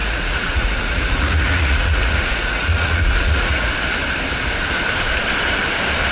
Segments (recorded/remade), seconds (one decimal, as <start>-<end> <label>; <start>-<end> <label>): 0.0-3.7 remade; 3.7-6.1 recorded